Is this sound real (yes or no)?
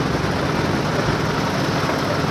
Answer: yes